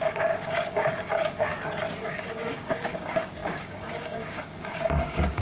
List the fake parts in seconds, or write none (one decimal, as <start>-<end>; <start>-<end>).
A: 0.0-1.5; 2.0-5.4